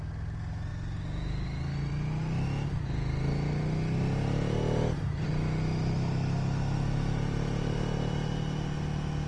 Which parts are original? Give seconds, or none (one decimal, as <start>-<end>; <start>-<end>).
0.0-9.3